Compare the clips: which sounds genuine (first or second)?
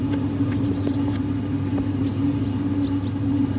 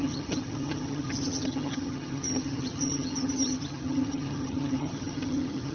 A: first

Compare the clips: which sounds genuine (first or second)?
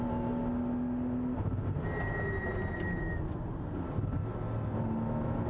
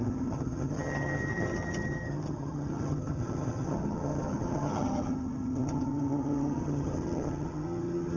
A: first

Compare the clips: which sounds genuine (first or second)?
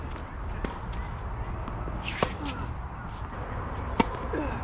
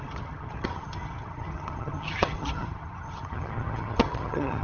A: first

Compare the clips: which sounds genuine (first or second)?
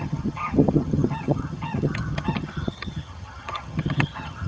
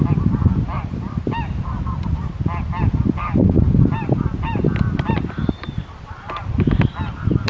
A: second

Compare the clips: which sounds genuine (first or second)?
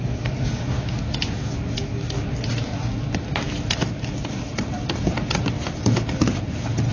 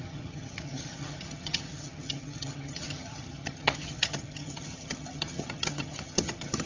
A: first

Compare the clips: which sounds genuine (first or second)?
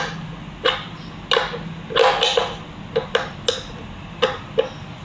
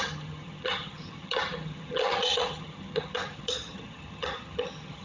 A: first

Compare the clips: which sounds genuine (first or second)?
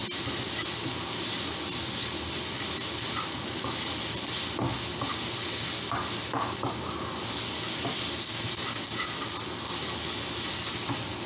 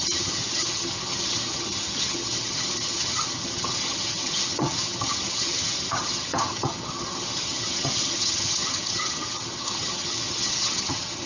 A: first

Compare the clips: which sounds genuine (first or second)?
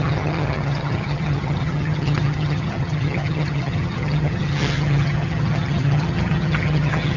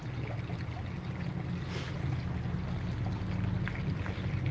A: second